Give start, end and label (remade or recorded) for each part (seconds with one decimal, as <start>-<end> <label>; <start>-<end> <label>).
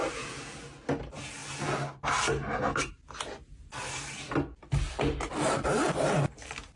0.0-6.8 recorded